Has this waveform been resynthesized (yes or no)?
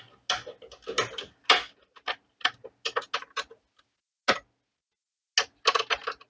no